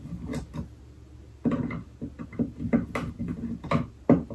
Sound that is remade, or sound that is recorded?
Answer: recorded